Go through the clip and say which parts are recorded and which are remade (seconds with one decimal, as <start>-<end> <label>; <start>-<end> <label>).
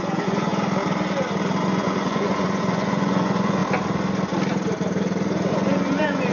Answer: 0.0-0.5 remade; 0.5-1.6 recorded; 1.6-3.6 remade; 3.6-5.5 recorded; 5.5-6.3 remade